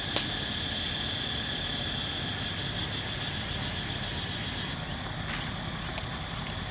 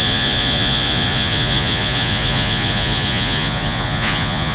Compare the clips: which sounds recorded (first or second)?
first